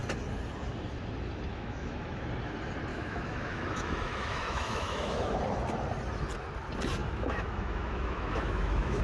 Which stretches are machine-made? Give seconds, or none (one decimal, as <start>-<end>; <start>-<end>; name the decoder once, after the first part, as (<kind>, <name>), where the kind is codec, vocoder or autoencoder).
1.5-2.2 (autoencoder, DAC-VAE); 2.9-5.4; 7.0-9.0